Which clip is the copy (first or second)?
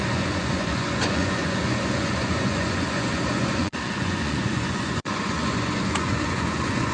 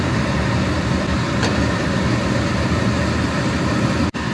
first